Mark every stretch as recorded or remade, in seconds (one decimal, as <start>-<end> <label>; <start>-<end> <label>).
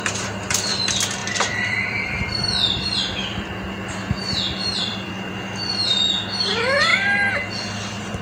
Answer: 0.0-1.2 recorded; 1.2-5.3 remade; 5.3-8.2 recorded